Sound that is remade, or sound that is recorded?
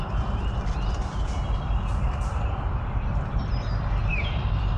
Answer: recorded